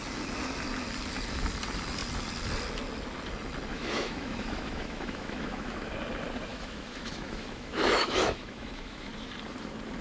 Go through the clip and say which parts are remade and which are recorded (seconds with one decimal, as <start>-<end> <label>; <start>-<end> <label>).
0.0-3.7 recorded; 3.7-5.9 remade; 5.9-6.5 recorded; 6.5-9.1 remade; 9.1-10.0 recorded